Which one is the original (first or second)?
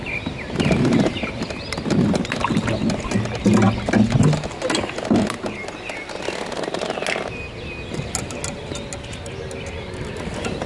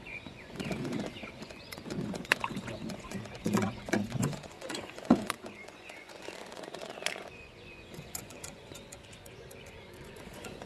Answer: first